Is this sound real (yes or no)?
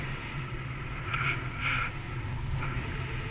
yes